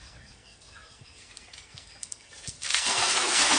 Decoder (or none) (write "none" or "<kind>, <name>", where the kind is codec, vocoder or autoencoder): codec, SNAC